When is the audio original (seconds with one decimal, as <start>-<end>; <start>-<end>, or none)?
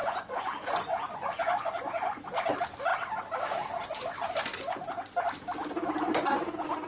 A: 2.2-6.9